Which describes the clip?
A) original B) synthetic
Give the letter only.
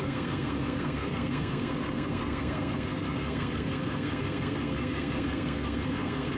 B